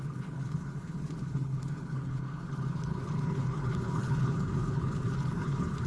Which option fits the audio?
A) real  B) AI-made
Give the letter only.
B